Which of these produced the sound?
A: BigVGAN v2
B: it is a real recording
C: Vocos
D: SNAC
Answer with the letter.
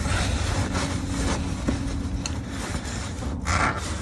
B